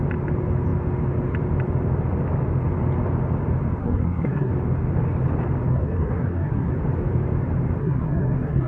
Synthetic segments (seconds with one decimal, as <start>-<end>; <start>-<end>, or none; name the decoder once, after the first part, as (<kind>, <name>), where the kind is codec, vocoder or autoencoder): 3.8-4.5 (codec, SNAC); 5.7-6.7; 7.8-8.7

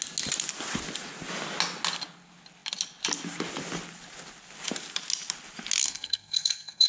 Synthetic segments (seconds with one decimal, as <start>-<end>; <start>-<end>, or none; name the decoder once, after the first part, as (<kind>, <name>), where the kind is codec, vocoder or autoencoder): 5.8-6.9 (codec, SNAC)

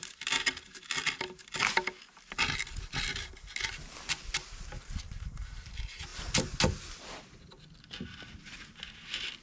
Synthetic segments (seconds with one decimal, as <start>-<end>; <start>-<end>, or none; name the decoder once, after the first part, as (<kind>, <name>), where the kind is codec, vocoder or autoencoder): none